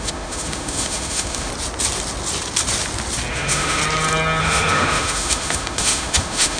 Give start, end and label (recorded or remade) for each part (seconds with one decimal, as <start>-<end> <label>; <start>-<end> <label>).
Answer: 0.0-1.5 remade; 1.5-3.3 recorded; 3.3-3.8 remade; 3.8-4.4 recorded; 4.4-6.6 remade